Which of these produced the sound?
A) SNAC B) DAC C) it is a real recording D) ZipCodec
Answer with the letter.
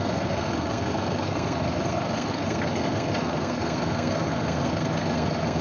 A